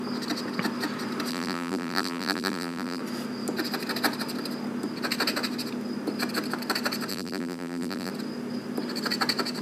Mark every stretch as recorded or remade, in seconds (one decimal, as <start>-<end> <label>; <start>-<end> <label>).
0.0-1.3 recorded; 1.3-3.0 remade; 3.0-7.1 recorded; 7.1-8.1 remade; 8.1-9.6 recorded

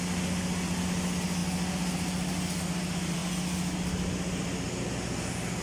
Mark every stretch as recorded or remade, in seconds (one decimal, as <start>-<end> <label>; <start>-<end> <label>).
0.0-5.6 recorded

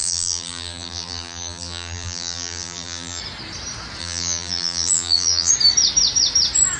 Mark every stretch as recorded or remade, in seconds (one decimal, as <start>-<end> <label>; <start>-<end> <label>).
0.0-3.2 remade; 3.2-4.0 recorded; 4.0-5.5 remade; 5.5-6.8 recorded

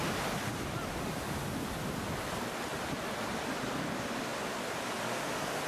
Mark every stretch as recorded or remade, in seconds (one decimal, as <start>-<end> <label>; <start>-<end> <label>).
0.0-2.7 recorded; 2.7-3.2 remade; 3.2-5.7 recorded